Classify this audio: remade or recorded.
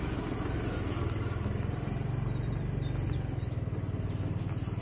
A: recorded